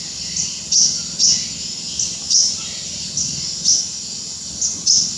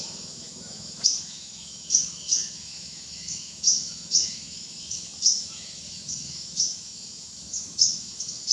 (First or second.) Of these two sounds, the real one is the first